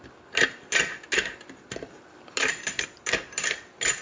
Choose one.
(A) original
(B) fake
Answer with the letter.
A